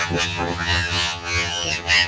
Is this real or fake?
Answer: fake